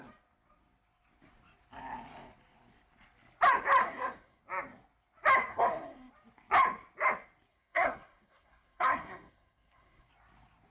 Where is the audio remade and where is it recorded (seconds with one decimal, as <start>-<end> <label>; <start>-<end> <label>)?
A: 0.0-3.8 recorded; 3.8-4.4 remade; 4.4-5.5 recorded; 5.5-6.1 remade; 6.1-7.5 recorded; 7.5-10.1 remade; 10.1-10.7 recorded